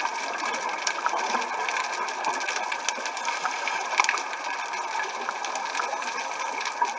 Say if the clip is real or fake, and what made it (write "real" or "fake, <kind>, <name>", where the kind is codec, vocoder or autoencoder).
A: real